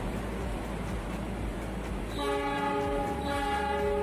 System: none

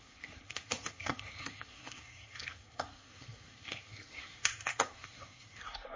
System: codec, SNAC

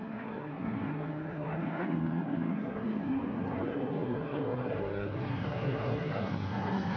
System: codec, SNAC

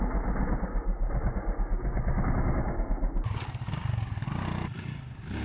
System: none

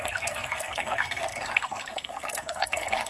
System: codec, SNAC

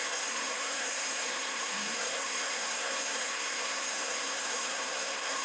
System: codec, SNAC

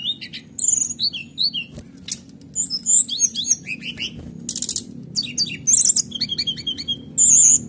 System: none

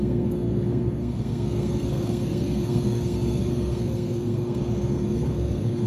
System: codec, SNAC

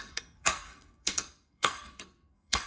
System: codec, SNAC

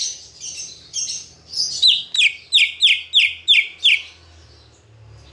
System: none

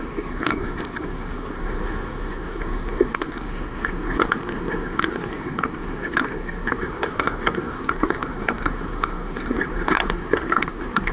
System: codec, SNAC